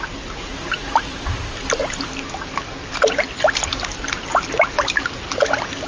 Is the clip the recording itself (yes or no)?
yes